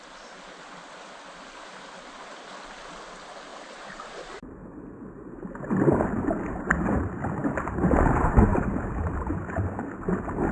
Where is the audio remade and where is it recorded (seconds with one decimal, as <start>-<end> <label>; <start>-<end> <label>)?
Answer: 0.0-3.5 recorded; 3.5-4.3 remade; 4.3-8.5 recorded; 8.5-9.8 remade; 9.8-10.5 recorded